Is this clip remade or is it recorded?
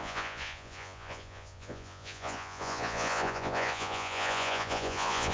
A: remade